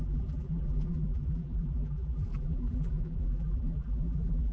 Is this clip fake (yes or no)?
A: yes